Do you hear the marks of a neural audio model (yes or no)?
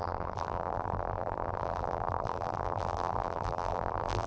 yes